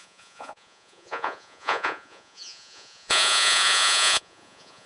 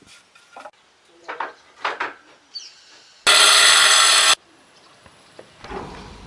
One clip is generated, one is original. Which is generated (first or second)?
first